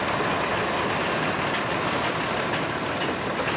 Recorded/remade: recorded